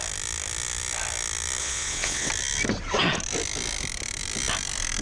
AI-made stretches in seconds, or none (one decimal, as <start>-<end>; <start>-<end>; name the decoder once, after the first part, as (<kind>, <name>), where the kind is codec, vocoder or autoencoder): 1.6-2.3 (vocoder, WaveNeXt)